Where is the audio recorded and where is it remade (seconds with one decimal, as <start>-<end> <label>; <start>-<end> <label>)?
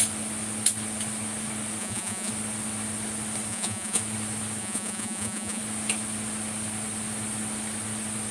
0.0-1.8 recorded; 1.8-2.3 remade; 2.3-3.5 recorded; 3.5-4.0 remade; 4.0-4.6 recorded; 4.6-5.6 remade; 5.6-8.3 recorded